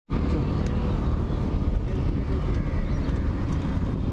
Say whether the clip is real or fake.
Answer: real